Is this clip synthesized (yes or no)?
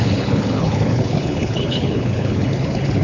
yes